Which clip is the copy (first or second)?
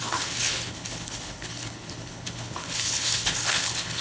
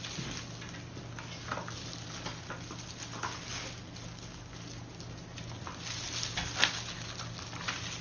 first